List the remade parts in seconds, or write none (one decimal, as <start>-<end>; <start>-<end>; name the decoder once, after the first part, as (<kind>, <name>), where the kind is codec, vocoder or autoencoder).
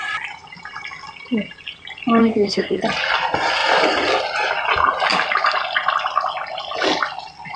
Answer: 2.2-2.8 (codec, SNAC)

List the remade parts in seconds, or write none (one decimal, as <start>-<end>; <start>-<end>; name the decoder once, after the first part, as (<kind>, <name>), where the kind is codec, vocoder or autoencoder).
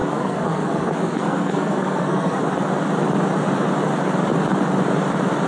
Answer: 0.0-2.4 (codec, SNAC)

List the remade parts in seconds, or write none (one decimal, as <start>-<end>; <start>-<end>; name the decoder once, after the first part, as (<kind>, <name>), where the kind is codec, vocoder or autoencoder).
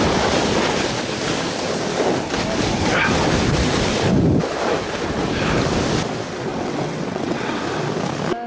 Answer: 6.5-7.6 (vocoder, WaveNeXt)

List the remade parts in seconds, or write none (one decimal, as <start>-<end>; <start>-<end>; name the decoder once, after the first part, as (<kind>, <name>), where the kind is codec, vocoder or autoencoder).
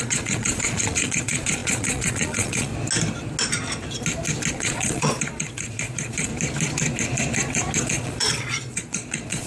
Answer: 0.0-2.7 (vocoder, Vocos); 4.5-6.3; 7.8-9.5